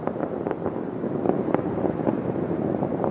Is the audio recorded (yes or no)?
no